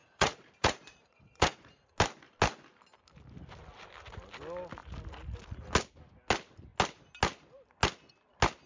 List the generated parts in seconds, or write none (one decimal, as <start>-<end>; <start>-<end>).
0.0-1.9